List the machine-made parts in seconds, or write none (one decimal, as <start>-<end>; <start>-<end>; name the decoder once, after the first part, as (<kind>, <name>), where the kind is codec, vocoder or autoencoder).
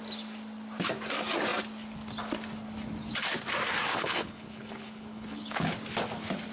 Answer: 3.9-5.7 (codec, HILCodec)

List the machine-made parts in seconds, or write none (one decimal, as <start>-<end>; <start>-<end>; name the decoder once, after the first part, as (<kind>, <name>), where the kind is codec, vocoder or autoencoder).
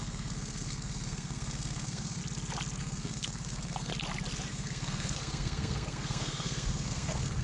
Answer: 0.0-2.2 (codec, SNAC); 2.8-3.9; 4.5-7.4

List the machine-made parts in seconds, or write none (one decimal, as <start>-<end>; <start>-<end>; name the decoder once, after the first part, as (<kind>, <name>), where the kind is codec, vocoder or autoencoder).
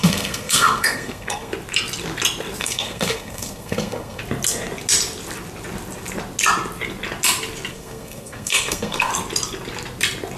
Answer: 0.0-1.5 (codec, SNAC); 2.6-4.2; 7.7-9.1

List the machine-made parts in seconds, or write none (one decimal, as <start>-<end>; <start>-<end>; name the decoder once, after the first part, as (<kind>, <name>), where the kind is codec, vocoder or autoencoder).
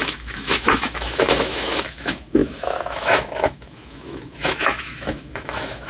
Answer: 0.0-5.9 (autoencoder, DAC-VAE)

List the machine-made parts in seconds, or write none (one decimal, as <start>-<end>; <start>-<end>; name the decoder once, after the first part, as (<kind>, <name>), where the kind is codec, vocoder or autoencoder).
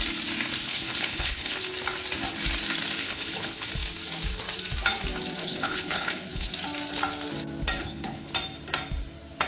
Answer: 0.7-1.6 (codec, HILCodec); 3.0-3.7; 5.4-6.5; 7.8-8.3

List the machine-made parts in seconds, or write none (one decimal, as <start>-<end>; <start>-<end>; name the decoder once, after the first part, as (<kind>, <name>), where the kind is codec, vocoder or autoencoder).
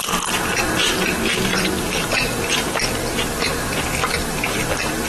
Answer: 0.0-2.8 (vocoder, BigVGAN v2); 4.3-5.1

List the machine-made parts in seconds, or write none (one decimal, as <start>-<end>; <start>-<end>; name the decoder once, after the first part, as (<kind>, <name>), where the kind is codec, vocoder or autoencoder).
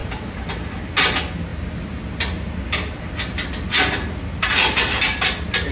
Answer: none